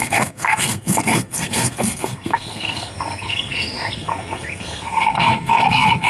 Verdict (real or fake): fake